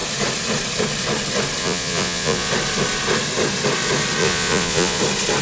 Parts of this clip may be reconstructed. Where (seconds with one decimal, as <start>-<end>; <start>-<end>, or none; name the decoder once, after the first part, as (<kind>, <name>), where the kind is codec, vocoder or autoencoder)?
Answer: 1.6-2.5 (vocoder, Vocos); 4.2-5.0